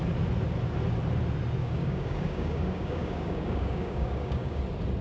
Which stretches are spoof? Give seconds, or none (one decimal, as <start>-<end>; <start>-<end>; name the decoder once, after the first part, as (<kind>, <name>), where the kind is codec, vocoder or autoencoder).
1.6-4.6 (codec, DAC)